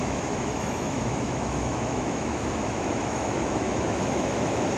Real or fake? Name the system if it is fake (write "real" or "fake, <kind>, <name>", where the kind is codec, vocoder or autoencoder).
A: fake, autoencoder, DAC-VAE